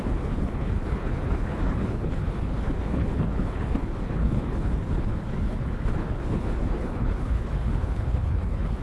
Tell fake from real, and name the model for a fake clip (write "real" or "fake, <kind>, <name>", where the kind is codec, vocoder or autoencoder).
fake, codec, HILCodec